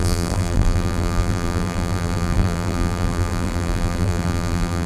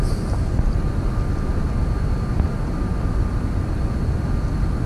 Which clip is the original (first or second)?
second